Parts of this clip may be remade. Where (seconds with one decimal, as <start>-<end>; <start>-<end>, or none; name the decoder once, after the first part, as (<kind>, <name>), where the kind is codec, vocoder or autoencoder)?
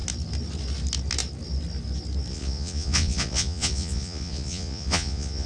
2.3-5.5 (vocoder, Vocos)